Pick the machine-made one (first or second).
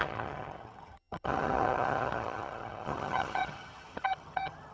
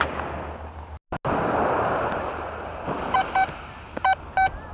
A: first